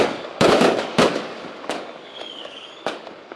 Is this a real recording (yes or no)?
no